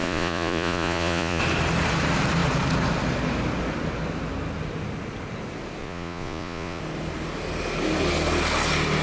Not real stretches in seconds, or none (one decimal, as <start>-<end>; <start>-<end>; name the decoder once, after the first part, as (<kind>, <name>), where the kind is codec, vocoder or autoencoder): 0.0-1.4 (vocoder, Vocos); 5.8-6.8